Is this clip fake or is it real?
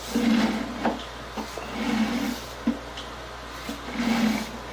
real